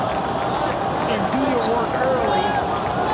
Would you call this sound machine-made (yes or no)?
no